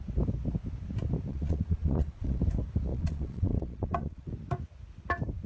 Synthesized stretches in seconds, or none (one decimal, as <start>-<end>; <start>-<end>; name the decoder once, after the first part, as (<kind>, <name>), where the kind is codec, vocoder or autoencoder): 1.3-2.4 (vocoder, Vocos); 2.9-4.3